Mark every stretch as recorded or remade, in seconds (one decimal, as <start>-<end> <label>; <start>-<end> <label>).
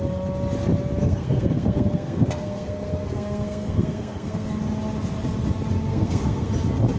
0.0-1.0 recorded; 1.0-4.5 remade; 4.5-5.9 recorded; 5.9-6.5 remade; 6.5-7.0 recorded